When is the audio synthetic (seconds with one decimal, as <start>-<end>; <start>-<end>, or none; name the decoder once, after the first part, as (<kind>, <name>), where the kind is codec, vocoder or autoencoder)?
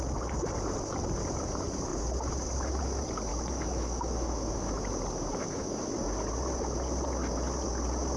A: 3.3-4.8 (autoencoder, DAC-VAE); 5.3-5.9